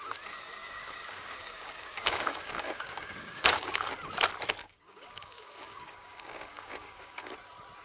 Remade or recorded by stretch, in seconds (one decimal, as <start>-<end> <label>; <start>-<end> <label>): 0.0-0.6 recorded; 0.6-3.9 remade; 3.9-4.6 recorded; 4.6-7.3 remade; 7.3-7.8 recorded